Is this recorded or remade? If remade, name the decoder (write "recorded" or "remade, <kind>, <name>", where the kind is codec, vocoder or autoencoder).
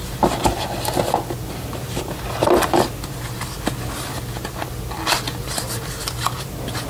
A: recorded